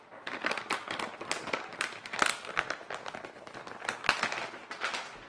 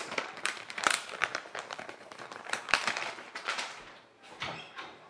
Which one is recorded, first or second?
first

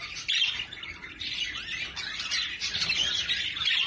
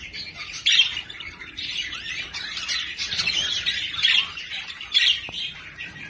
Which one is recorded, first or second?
first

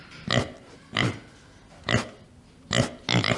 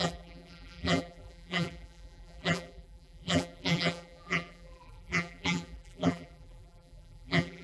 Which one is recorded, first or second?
first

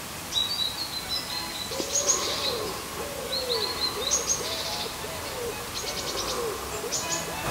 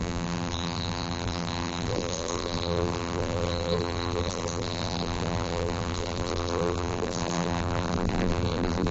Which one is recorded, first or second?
first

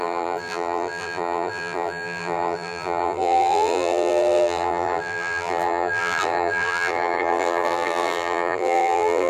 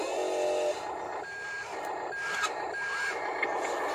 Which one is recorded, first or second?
second